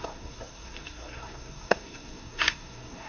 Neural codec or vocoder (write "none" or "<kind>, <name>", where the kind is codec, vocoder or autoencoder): codec, SNAC